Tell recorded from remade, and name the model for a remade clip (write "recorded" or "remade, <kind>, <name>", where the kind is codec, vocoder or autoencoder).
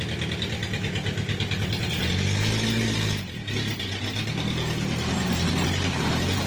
recorded